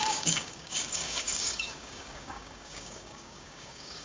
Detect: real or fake fake